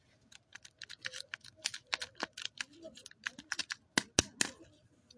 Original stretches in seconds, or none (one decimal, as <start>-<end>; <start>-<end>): 0.0-0.5; 3.6-5.2